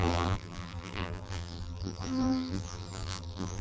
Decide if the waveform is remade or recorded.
remade